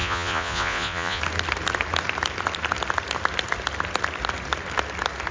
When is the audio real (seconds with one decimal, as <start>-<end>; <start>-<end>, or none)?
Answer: 1.2-5.3